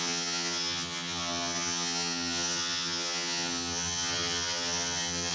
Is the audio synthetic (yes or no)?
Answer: yes